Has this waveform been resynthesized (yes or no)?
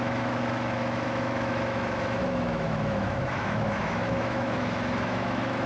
yes